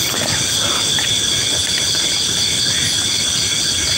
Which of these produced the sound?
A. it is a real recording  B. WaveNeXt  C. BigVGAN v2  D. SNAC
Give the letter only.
A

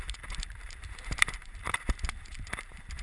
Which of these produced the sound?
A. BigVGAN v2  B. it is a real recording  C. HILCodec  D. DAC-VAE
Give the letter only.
A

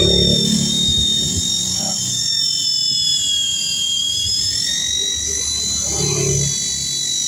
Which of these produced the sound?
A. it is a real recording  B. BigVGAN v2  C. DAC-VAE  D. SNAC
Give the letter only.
A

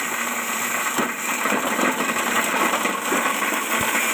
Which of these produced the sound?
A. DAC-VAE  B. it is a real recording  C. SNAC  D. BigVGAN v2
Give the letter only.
D